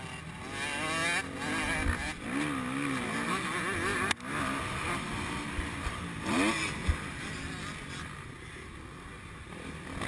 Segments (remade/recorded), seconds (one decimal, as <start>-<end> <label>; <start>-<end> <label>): 0.0-10.1 recorded